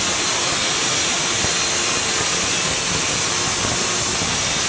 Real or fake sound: real